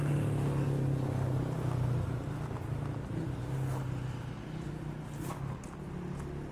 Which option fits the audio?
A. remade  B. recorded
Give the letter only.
B